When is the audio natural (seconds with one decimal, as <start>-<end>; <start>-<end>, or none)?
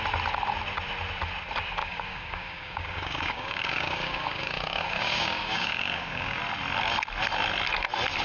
0.0-1.8; 6.4-8.2